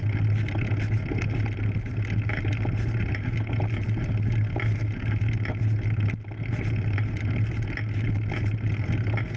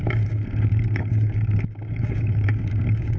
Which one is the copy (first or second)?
second